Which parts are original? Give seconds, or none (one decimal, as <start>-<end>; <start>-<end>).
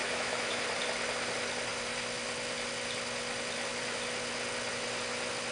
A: 0.6-5.5